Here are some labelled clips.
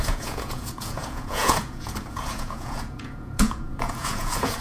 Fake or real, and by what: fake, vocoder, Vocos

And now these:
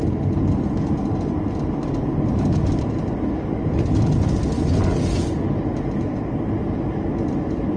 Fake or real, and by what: real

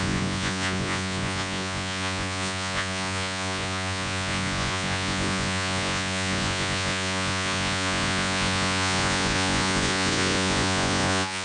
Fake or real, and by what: fake, vocoder, Vocos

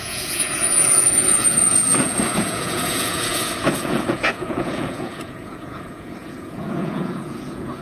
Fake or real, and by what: fake, vocoder, Vocos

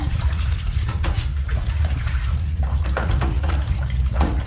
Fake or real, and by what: fake, vocoder, Vocos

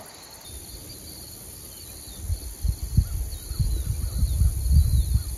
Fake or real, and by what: real